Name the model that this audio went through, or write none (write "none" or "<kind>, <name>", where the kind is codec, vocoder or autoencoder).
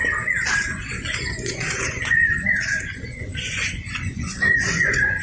vocoder, Vocos